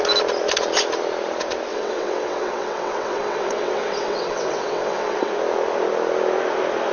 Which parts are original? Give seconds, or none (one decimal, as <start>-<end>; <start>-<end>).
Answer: 0.0-1.7; 5.3-6.9